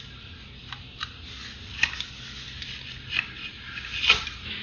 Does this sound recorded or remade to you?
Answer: recorded